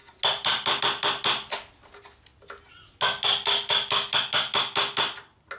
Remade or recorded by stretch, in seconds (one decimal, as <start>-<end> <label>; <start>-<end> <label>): 0.0-5.6 recorded